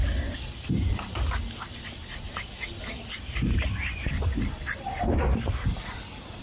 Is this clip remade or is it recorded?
remade